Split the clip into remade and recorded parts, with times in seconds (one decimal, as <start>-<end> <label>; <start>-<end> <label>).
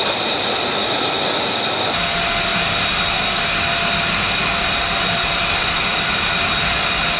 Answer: 0.0-7.2 recorded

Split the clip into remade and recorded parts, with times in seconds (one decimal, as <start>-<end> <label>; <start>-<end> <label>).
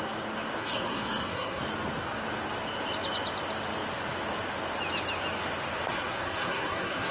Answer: 0.0-0.6 recorded; 0.6-1.6 remade; 1.6-5.9 recorded; 5.9-7.1 remade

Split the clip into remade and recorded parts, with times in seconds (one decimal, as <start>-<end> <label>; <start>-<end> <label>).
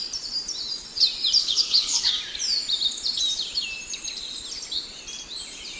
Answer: 0.0-1.4 recorded; 1.4-2.1 remade; 2.1-5.8 recorded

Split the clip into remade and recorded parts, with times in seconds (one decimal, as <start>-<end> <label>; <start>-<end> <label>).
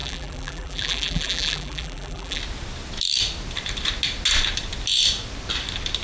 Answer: 0.0-2.4 remade; 2.4-6.0 recorded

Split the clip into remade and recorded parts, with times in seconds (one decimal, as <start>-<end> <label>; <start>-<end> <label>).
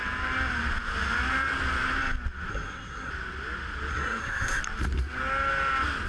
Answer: 0.0-2.5 recorded; 2.5-3.1 remade; 3.1-3.9 recorded; 3.9-4.6 remade; 4.6-6.1 recorded